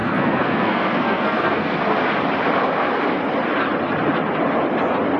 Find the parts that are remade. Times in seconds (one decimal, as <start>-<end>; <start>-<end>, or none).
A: 0.0-1.8